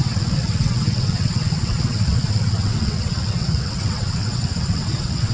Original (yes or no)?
no